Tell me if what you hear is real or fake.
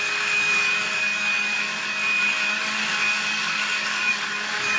fake